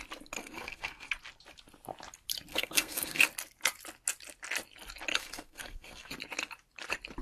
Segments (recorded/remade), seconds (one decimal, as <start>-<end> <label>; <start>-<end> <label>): 0.0-0.4 recorded; 0.4-1.1 remade; 1.1-2.5 recorded; 2.5-3.2 remade; 3.2-5.1 recorded; 5.1-6.1 remade; 6.1-7.2 recorded